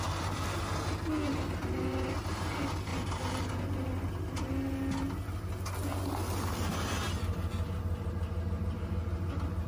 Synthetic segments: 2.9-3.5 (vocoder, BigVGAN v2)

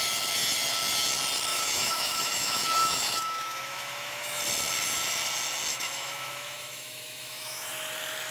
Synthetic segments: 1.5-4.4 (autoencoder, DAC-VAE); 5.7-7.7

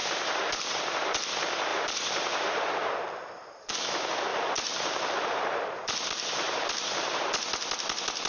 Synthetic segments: 0.0-0.8 (vocoder, BigVGAN v2); 1.7-3.7; 4.3-7.3

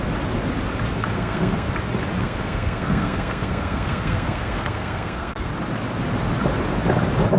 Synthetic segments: 1.0-1.7 (codec, SNAC); 2.2-5.5